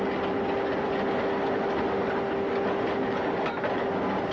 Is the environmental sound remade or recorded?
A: recorded